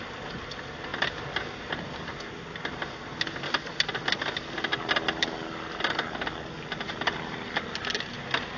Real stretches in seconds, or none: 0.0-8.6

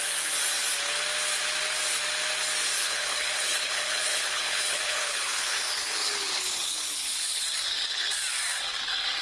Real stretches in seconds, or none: 0.0-2.8; 7.4-9.2